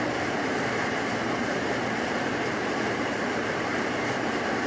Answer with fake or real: fake